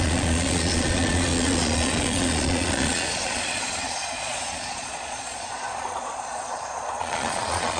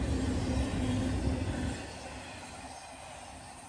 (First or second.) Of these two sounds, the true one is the second